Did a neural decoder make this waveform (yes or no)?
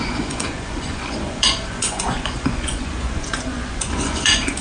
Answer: yes